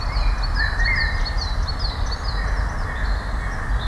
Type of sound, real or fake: real